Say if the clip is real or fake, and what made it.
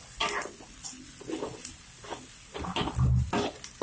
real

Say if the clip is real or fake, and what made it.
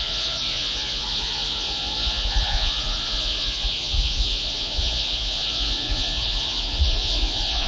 fake, vocoder, Vocos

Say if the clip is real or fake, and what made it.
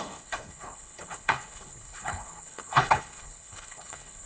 fake, codec, HILCodec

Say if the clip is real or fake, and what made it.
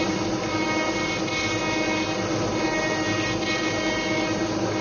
real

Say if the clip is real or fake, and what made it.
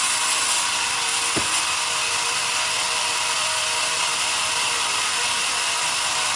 real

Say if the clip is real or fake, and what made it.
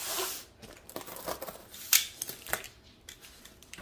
real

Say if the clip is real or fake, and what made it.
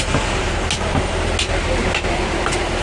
real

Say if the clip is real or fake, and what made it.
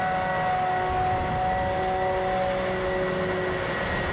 real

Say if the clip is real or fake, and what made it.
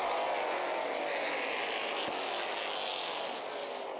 real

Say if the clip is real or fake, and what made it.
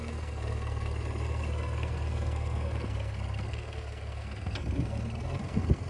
fake, codec, SNAC